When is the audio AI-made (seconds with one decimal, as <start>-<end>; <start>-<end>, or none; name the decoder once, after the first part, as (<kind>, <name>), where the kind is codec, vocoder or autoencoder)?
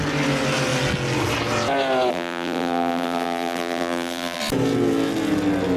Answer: 2.1-4.4 (vocoder, BigVGAN v2)